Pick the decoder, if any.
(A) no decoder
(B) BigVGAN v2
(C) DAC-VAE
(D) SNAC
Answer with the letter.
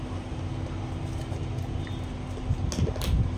A